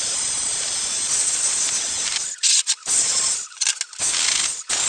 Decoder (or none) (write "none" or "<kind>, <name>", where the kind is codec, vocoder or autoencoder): none